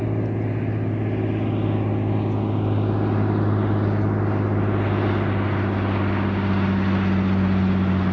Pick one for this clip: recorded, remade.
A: recorded